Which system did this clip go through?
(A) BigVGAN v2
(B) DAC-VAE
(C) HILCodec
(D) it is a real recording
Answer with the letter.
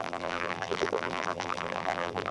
A